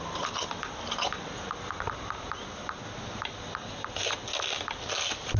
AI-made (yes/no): no